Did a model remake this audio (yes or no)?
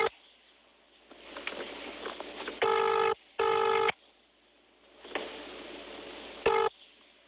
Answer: no